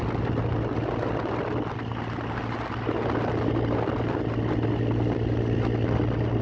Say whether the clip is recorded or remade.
recorded